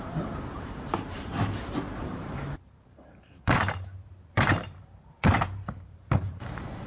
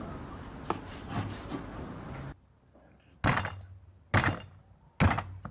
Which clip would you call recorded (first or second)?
second